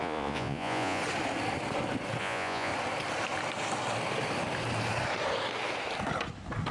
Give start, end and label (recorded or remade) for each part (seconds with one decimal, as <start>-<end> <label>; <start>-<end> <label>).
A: 0.0-1.0 remade; 1.0-2.2 recorded; 2.2-2.7 remade; 2.7-6.7 recorded